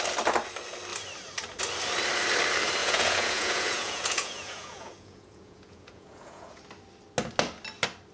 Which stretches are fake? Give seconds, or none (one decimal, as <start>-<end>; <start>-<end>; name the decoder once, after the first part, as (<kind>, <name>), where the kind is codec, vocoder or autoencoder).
2.8-6.6 (vocoder, Vocos)